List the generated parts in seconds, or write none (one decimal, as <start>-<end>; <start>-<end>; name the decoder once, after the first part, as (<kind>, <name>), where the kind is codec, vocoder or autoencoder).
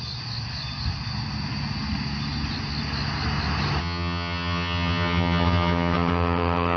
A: 3.8-6.8 (vocoder, HiFi-GAN)